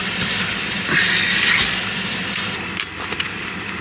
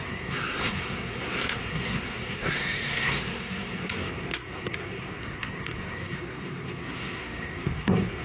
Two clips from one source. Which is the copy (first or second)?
second